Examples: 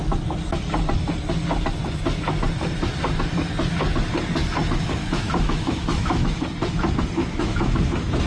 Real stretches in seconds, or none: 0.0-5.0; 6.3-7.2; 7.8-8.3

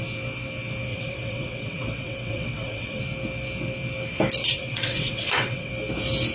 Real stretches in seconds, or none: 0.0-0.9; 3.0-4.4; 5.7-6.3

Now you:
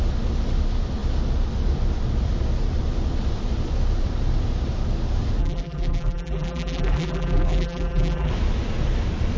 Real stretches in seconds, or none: 0.0-5.4; 8.3-9.4

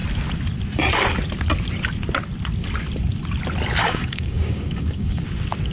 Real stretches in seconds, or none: 0.0-3.8; 5.2-5.7

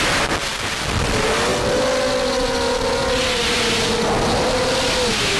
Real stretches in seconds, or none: 0.0-5.4

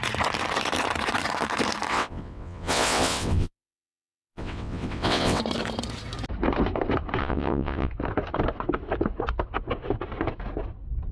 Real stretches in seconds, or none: 0.0-1.9; 5.4-7.2; 7.9-11.1